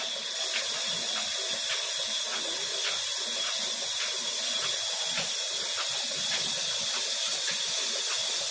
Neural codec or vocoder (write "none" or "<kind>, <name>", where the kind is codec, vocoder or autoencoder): none